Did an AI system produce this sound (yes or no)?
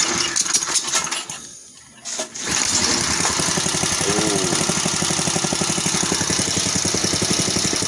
no